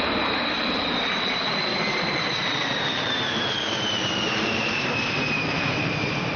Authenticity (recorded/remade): remade